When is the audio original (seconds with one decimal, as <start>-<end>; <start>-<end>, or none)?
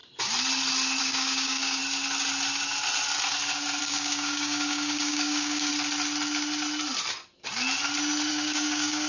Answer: 0.0-1.0; 1.8-3.8; 5.7-8.3